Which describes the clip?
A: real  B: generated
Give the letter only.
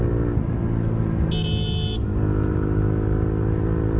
A